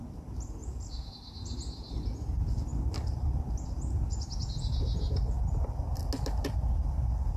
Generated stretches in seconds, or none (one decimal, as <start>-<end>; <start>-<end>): 0.6-1.1